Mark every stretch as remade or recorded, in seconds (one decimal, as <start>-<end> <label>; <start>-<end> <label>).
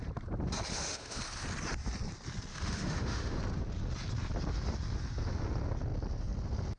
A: 0.0-0.7 recorded; 0.7-1.2 remade; 1.2-2.5 recorded; 2.5-3.4 remade; 3.4-6.8 recorded